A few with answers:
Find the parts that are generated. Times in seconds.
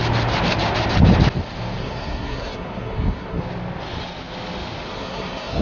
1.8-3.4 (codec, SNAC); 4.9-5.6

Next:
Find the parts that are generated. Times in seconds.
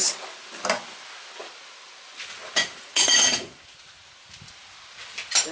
2.7-3.6 (vocoder, Vocos)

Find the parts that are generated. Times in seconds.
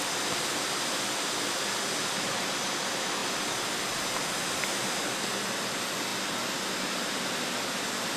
none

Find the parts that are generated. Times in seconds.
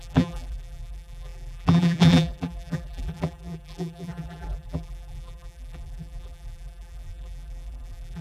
0.0-8.2 (vocoder, BigVGAN v2)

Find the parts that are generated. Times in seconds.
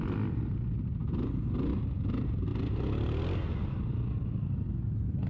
none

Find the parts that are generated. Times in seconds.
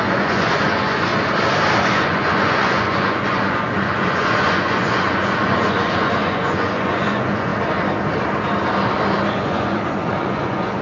0.0-1.1 (vocoder, Vocos); 1.8-7.5; 9.3-10.8